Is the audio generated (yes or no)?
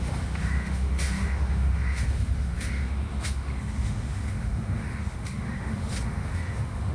yes